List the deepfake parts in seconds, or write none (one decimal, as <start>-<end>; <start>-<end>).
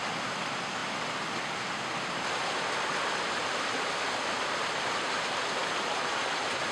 0.0-0.8; 4.8-6.7